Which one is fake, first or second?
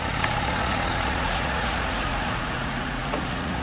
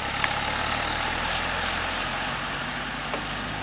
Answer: first